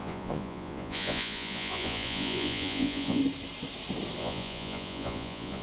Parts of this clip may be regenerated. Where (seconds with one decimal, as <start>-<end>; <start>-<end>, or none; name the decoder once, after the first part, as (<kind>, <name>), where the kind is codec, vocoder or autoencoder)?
0.0-3.2 (vocoder, Vocos); 4.2-5.6